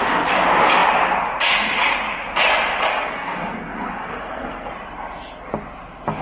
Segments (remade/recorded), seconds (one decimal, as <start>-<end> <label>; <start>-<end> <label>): 0.0-2.9 recorded; 2.9-4.7 remade; 4.7-6.2 recorded